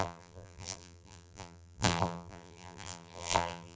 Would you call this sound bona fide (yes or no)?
no